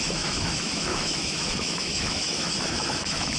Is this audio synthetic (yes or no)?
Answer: yes